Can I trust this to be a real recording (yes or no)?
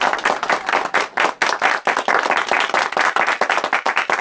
yes